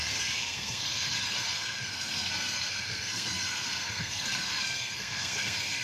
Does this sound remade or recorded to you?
remade